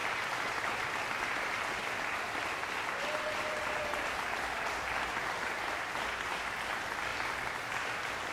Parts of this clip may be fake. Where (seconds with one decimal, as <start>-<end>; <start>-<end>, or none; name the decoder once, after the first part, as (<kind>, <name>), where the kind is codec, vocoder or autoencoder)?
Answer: none